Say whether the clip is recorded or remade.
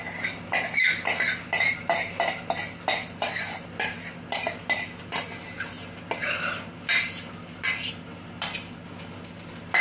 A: recorded